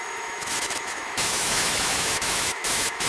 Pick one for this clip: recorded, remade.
remade